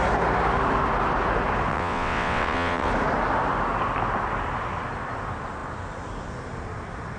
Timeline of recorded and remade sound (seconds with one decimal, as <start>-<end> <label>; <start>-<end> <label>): 0.0-1.7 recorded; 1.7-2.9 remade; 2.9-7.2 recorded